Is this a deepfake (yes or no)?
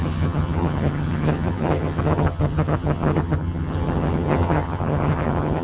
yes